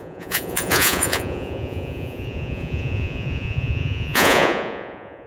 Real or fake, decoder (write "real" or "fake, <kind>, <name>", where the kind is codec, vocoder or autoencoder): fake, vocoder, Vocos